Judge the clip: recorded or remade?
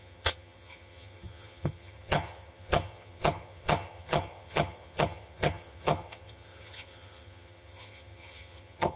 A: remade